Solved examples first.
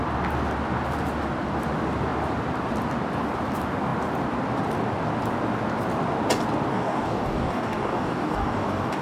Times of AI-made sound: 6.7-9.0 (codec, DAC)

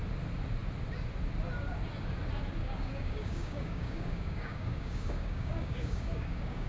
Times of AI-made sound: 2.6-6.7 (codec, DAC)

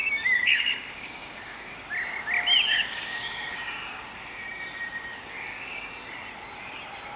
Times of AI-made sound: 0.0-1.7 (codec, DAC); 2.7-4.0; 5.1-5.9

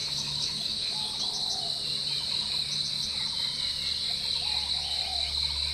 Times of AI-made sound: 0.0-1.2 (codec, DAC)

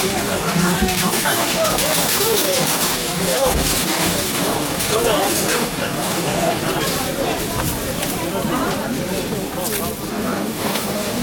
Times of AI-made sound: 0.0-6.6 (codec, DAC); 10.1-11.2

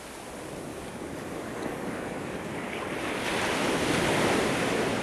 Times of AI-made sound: 0.7-2.8 (codec, DAC)